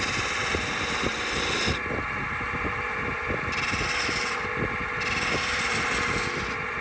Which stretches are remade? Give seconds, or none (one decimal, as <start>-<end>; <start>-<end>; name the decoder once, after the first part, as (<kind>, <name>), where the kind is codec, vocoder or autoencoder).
none